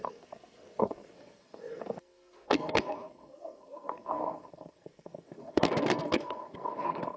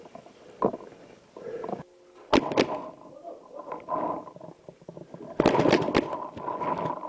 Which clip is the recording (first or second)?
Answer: second